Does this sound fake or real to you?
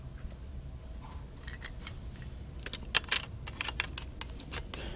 real